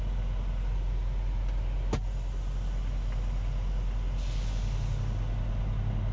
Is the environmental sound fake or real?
real